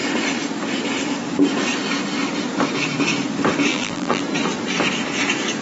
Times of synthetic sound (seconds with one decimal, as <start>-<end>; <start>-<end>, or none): 3.7-4.2